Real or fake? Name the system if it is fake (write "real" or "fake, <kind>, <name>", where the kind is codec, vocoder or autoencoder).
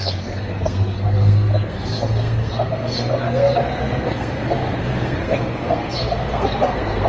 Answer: fake, codec, SNAC